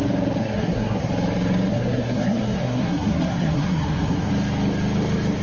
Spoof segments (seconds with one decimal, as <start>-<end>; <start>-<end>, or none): 0.4-1.1; 1.7-4.3